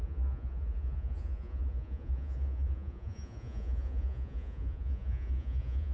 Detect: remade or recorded remade